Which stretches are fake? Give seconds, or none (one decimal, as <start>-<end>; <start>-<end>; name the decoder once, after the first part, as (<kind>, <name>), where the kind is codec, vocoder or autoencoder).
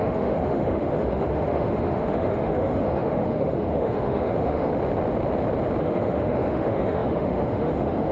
0.0-4.7 (autoencoder, DAC-VAE); 5.8-8.1